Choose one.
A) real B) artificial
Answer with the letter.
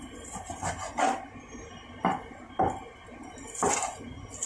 A